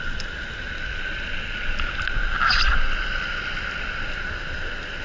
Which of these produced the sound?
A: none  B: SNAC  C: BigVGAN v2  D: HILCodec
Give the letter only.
A